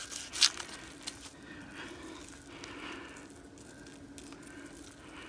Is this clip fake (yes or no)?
no